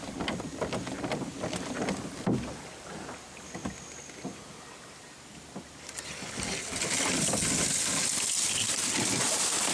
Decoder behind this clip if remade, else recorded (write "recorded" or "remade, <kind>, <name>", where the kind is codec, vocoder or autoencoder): recorded